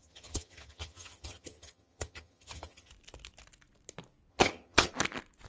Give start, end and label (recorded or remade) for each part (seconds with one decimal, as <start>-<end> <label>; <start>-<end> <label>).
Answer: 0.0-2.9 remade; 2.9-4.3 recorded; 4.3-4.9 remade; 4.9-5.5 recorded